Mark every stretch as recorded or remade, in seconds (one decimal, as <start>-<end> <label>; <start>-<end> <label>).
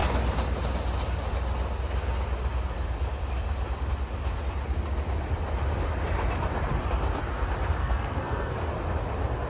0.0-7.8 recorded; 7.8-8.5 remade; 8.5-9.5 recorded